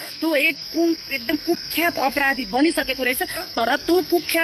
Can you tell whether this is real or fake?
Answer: fake